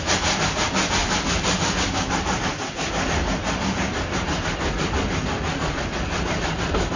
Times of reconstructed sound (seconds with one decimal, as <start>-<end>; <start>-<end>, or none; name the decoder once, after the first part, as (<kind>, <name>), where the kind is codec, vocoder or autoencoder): 1.0-2.1 (vocoder, BigVGAN v2)